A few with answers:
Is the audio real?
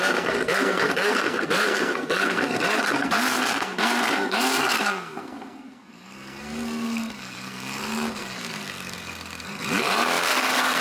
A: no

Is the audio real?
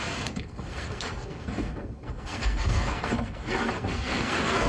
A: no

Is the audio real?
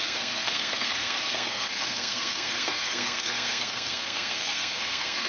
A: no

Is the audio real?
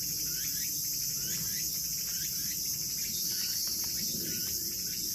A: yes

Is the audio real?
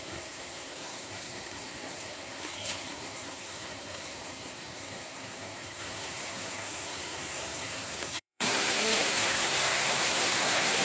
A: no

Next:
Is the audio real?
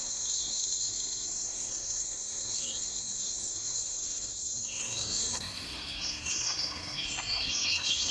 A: no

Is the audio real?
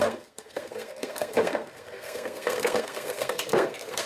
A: no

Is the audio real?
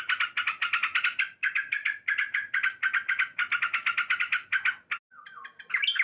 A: yes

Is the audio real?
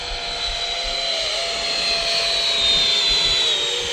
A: yes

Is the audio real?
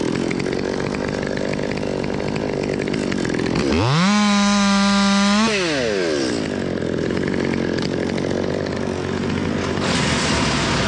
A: yes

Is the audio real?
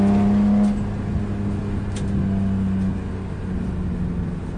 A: yes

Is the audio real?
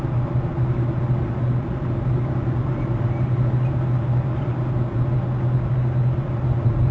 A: yes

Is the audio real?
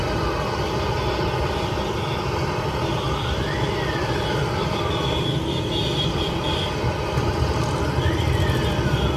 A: yes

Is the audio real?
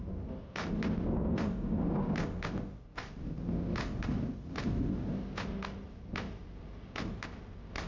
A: yes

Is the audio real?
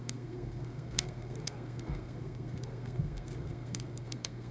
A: no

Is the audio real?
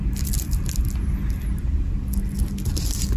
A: yes